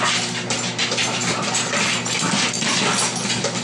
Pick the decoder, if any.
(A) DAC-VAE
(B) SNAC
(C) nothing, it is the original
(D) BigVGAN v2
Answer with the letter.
C